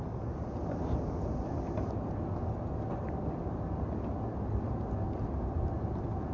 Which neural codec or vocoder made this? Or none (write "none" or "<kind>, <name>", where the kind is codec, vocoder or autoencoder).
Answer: none